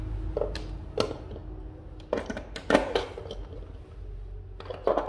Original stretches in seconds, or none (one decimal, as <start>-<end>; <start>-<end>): 0.0-5.1